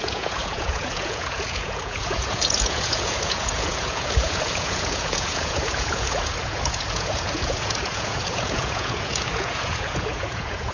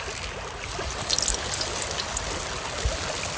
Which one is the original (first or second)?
second